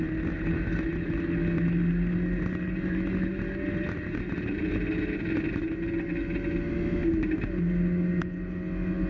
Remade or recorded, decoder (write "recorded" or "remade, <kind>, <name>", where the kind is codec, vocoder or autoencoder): recorded